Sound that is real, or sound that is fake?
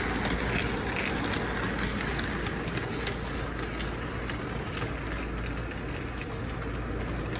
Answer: real